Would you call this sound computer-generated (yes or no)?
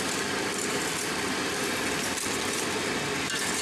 no